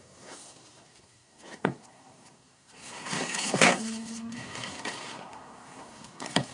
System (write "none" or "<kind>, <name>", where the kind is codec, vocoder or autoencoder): codec, SNAC